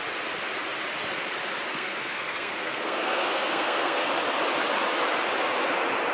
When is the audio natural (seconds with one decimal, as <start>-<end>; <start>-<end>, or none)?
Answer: 0.0-1.7; 4.1-6.1